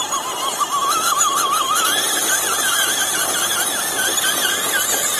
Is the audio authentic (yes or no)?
yes